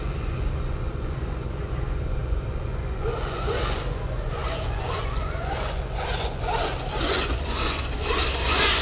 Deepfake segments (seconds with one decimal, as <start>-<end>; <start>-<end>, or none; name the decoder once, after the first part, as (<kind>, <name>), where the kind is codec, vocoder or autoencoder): 0.0-8.8 (vocoder, Vocos)